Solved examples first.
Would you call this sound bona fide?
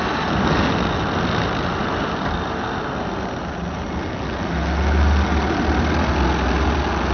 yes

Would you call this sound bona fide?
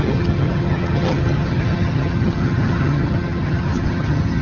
no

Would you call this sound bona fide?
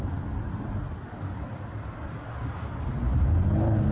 yes